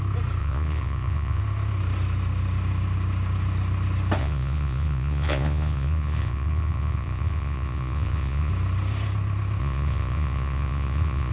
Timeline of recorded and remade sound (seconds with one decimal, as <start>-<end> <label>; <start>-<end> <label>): 0.0-0.4 recorded; 0.4-1.4 remade; 1.4-4.2 recorded; 4.2-8.5 remade; 8.5-9.6 recorded; 9.6-11.3 remade